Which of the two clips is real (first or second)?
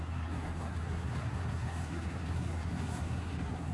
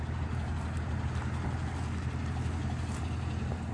second